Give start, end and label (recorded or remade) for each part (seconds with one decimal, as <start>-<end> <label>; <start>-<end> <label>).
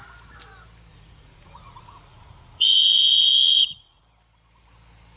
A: 0.0-0.9 recorded; 0.9-4.0 remade; 4.0-5.2 recorded